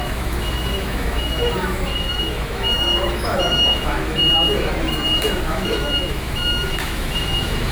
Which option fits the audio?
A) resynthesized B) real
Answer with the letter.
A